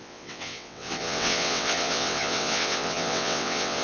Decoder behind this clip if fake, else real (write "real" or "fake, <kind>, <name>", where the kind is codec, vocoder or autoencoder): fake, vocoder, WaveNeXt